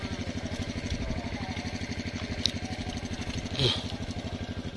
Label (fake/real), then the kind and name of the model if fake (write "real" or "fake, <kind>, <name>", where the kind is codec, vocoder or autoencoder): real